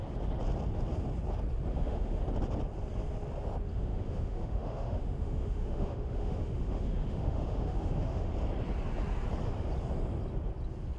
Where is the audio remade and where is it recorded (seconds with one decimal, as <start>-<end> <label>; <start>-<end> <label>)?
0.0-1.7 recorded; 1.7-2.2 remade; 2.2-3.7 recorded; 3.7-8.3 remade; 8.3-11.0 recorded